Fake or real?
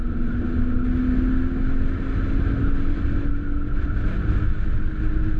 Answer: real